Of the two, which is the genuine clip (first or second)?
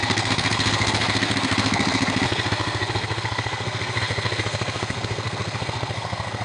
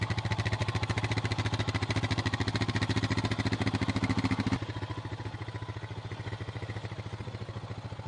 second